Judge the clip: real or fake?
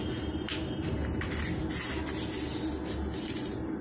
real